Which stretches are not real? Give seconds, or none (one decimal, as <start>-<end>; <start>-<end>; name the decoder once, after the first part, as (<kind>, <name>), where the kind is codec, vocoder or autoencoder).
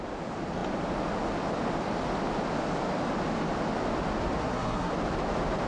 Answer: 4.4-4.9 (codec, SNAC)